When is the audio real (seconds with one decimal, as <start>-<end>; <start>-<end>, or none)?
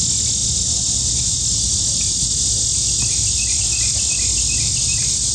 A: 0.0-5.3